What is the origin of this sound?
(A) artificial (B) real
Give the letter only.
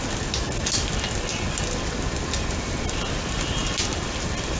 B